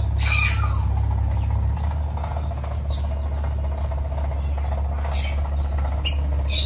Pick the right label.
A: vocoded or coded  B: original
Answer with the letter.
B